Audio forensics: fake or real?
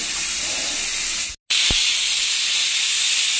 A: real